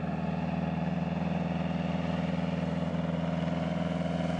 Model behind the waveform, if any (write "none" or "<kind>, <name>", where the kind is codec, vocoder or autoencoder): none